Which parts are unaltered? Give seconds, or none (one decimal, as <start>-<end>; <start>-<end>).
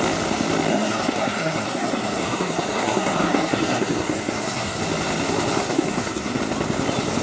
0.0-0.7; 4.8-5.6; 6.4-7.2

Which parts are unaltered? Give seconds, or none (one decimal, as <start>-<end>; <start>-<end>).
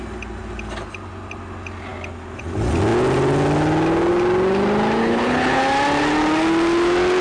0.0-5.0; 5.6-7.2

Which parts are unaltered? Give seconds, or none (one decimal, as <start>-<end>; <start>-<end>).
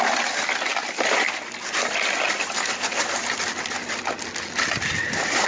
0.0-5.5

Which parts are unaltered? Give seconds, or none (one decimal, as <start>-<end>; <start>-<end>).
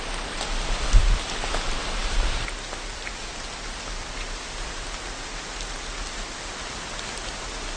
0.0-7.8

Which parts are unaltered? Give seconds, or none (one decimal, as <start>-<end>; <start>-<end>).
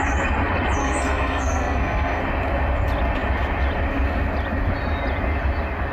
0.0-0.8; 2.2-5.9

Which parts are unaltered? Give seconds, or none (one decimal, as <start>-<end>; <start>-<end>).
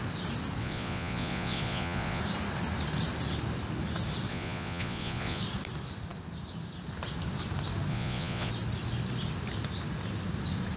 0.0-0.6; 2.2-4.3; 5.4-7.9; 8.5-10.8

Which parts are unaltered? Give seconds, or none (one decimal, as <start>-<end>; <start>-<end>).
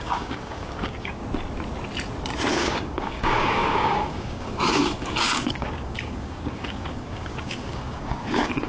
1.2-2.5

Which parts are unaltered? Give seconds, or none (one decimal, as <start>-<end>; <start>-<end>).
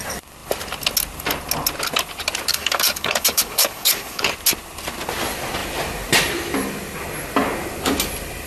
0.0-2.5; 4.3-8.5